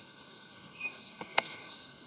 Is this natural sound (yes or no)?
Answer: no